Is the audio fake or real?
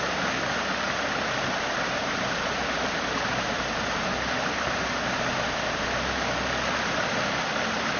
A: real